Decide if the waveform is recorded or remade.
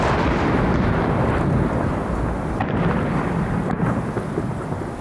recorded